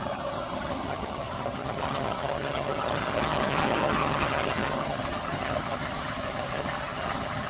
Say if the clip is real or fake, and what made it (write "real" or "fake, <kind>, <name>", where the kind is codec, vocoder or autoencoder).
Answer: fake, vocoder, HiFi-GAN